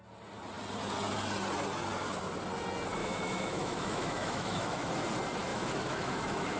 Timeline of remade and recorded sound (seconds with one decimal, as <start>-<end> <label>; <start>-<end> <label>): 0.0-3.0 recorded; 3.0-4.9 remade; 4.9-5.5 recorded; 5.5-6.6 remade